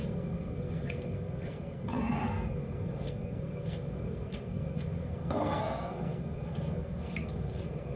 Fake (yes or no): yes